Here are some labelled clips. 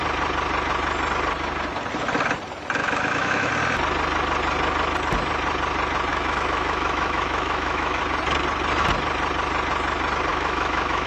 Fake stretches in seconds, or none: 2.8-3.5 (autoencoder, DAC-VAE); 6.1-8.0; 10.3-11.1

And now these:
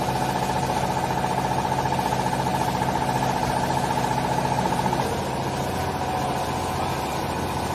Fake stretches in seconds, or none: none

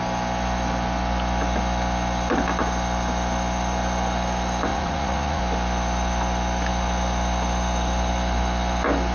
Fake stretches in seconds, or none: 4.7-5.4 (vocoder, Vocos)

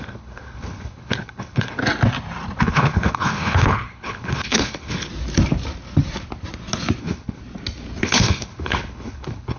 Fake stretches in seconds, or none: 0.0-1.8 (codec, HILCodec); 2.6-5.1; 7.0-7.4; 8.0-9.6

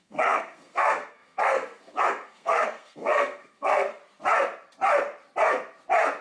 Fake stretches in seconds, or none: 0.0-4.0 (codec, SNAC)

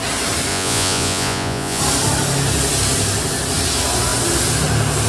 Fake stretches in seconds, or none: 0.5-1.8 (vocoder, Vocos)